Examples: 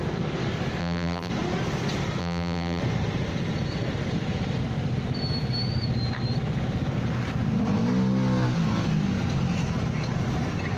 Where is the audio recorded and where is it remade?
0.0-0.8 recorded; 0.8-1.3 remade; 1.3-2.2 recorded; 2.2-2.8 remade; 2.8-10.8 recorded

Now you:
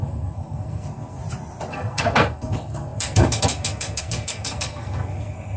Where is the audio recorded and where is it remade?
0.0-1.2 remade; 1.2-1.7 recorded; 1.7-5.6 remade

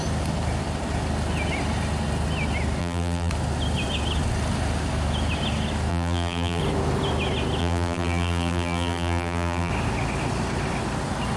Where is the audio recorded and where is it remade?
0.0-2.8 recorded; 2.8-3.3 remade; 3.3-5.9 recorded; 5.9-6.6 remade; 6.6-7.6 recorded; 7.6-9.7 remade; 9.7-11.4 recorded

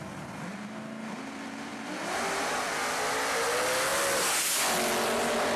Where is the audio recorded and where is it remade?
0.0-5.6 recorded

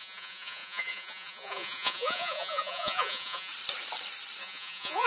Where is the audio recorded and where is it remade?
0.0-3.5 remade; 3.5-4.4 recorded; 4.4-5.1 remade

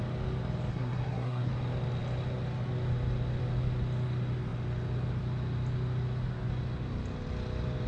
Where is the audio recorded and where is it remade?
0.0-0.7 recorded; 0.7-1.5 remade; 1.5-7.9 recorded